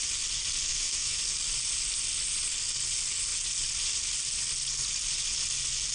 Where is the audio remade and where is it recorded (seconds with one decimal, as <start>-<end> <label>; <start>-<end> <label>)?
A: 0.0-0.7 recorded; 0.7-1.2 remade; 1.2-5.9 recorded